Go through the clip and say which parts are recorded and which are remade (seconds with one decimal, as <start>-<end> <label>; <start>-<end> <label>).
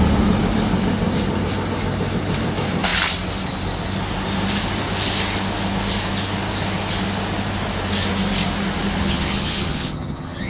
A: 0.0-9.0 recorded; 9.0-10.5 remade